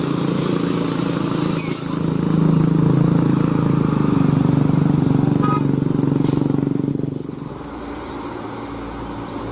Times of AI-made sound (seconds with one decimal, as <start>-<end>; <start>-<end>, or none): 6.9-7.5